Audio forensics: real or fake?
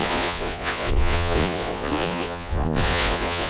fake